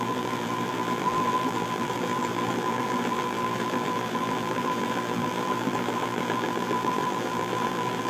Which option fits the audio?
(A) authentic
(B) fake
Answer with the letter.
B